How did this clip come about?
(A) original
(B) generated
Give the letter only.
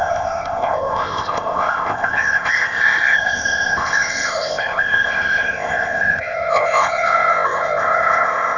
B